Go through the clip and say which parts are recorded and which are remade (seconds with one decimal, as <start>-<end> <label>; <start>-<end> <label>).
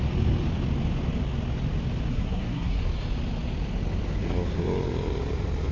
0.0-2.1 recorded; 2.1-2.8 remade; 2.8-5.7 recorded